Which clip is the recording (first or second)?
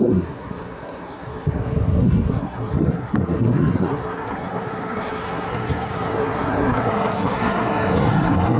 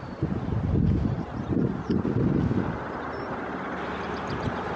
second